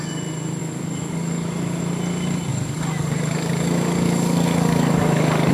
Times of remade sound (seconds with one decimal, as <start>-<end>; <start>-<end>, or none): 0.6-1.8; 2.5-5.5